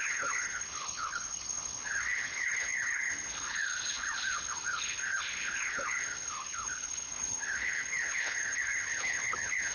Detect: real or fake fake